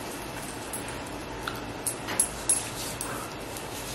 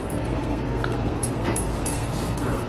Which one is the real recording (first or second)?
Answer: first